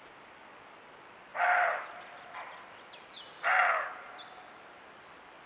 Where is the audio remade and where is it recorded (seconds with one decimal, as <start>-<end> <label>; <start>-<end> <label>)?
0.0-5.5 recorded